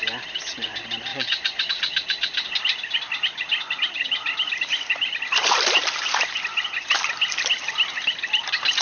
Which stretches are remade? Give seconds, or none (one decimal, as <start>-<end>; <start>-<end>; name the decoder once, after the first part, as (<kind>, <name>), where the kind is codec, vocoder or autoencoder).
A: 1.1-1.7 (vocoder, Vocos)